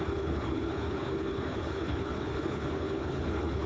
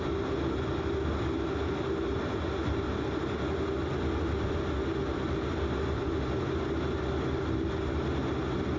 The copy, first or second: first